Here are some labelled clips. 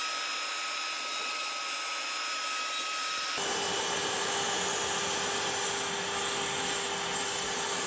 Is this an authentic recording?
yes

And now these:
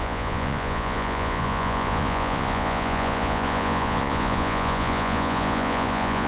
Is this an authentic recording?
no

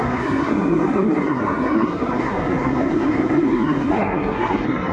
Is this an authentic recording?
no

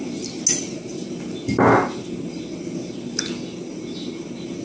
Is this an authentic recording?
yes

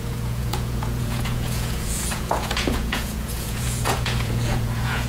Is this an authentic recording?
no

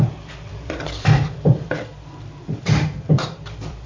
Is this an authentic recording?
no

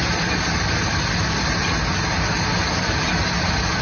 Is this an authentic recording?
yes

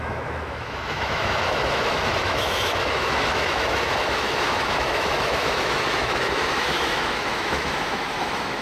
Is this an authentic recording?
no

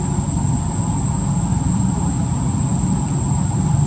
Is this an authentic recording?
yes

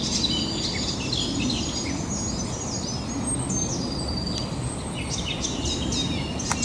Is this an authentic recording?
yes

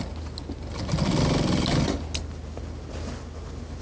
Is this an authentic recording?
yes